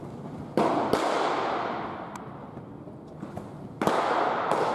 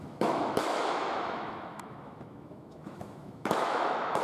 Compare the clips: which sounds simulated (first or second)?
second